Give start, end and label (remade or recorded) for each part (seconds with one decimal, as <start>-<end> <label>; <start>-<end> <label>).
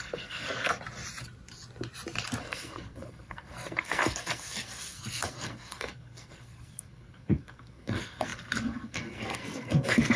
0.0-0.7 remade; 0.7-2.4 recorded; 2.4-10.2 remade